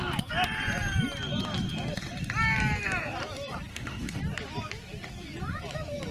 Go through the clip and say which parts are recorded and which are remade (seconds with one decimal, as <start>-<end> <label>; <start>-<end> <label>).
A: 0.0-3.7 recorded; 3.7-4.2 remade; 4.2-6.1 recorded